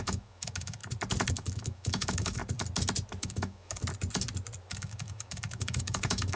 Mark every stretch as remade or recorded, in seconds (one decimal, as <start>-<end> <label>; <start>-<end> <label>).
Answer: 0.0-0.8 remade; 0.8-1.3 recorded; 1.3-2.4 remade; 2.4-3.2 recorded; 3.2-3.8 remade; 3.8-4.7 recorded; 4.7-6.4 remade